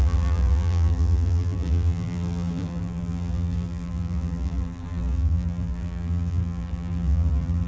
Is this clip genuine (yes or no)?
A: no